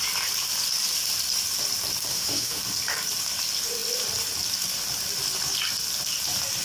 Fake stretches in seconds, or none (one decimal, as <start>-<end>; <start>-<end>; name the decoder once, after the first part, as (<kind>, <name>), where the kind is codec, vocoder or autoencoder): 2.1-2.6 (autoencoder, DAC-VAE)

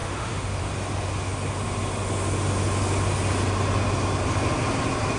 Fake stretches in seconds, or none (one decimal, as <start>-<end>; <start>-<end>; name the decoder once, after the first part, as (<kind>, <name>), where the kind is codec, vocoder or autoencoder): 0.0-0.6 (autoencoder, DAC-VAE)

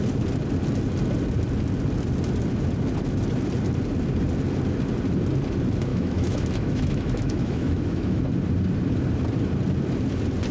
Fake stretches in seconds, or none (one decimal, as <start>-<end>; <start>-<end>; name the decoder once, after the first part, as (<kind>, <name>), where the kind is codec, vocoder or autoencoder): 5.9-8.2 (autoencoder, DAC-VAE)

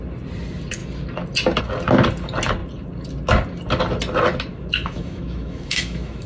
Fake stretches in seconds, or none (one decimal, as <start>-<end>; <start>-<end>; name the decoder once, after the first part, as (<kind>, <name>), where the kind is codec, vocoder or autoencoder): 4.5-6.3 (autoencoder, DAC-VAE)